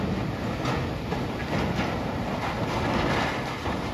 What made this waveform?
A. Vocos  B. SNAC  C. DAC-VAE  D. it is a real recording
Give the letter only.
D